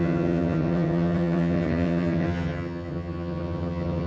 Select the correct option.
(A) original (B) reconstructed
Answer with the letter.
B